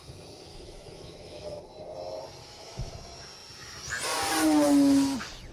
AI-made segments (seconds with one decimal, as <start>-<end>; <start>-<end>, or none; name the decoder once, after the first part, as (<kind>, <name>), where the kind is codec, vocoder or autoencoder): 0.5-1.6 (autoencoder, DAC-VAE); 2.4-2.9